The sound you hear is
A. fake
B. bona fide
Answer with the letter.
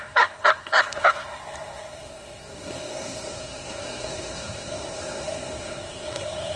A